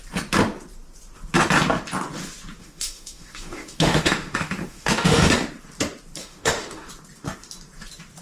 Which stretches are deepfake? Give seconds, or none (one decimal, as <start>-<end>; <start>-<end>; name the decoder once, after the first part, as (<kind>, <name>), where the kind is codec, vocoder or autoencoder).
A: 2.6-5.3 (autoencoder, DAC-VAE); 6.2-6.9

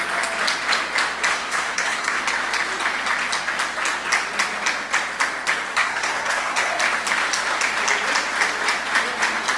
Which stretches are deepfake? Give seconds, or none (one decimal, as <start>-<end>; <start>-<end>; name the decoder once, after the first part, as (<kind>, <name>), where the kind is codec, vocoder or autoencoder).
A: 1.3-2.2 (codec, SNAC); 5.7-6.7

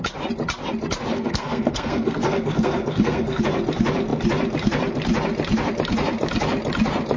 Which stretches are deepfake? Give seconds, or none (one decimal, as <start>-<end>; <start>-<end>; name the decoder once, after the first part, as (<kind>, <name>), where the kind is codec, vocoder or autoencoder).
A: 1.1-3.4 (codec, SNAC)